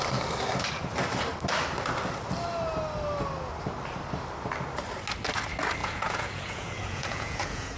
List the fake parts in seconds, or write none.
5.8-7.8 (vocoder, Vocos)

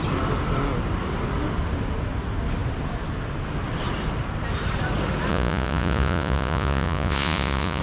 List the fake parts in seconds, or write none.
5.3-7.8 (vocoder, Vocos)

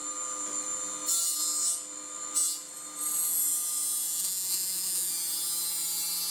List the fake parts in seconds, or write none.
4.2-5.1 (vocoder, Vocos)

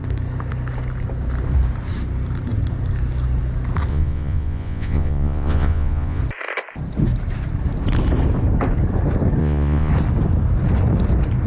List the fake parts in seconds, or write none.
3.9-6.2 (vocoder, Vocos); 9.4-9.9

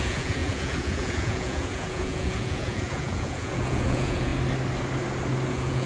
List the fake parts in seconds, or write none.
0.0-4.3 (vocoder, Vocos); 5.5-5.9

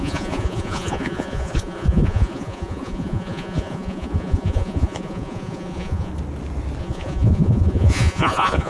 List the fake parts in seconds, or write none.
0.0-6.1 (vocoder, Vocos); 6.8-8.7

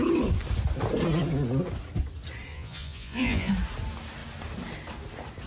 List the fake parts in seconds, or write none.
2.5-3.5 (vocoder, Vocos)

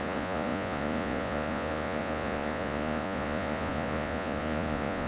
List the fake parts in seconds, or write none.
0.0-5.1 (vocoder, Vocos)